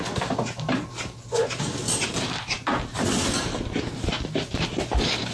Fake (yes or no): no